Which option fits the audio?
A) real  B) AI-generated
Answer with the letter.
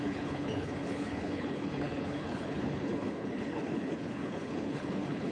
B